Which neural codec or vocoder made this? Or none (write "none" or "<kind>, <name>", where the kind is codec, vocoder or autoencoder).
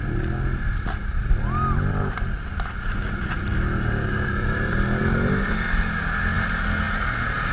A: none